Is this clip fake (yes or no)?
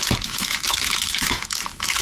yes